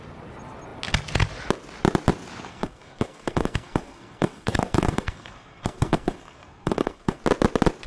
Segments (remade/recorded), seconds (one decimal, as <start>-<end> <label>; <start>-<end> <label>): 0.0-2.5 recorded; 2.5-7.2 remade; 7.2-7.9 recorded